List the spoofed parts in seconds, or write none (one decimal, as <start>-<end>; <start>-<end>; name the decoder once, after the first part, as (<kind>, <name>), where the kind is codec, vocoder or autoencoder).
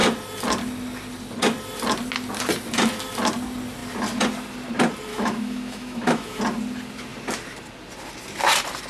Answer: 5.1-6.4 (autoencoder, DAC-VAE)